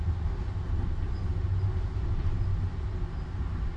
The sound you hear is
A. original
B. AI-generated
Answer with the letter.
A